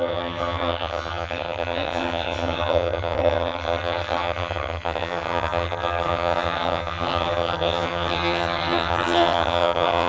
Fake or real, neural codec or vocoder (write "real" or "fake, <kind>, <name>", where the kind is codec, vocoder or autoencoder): fake, vocoder, HiFi-GAN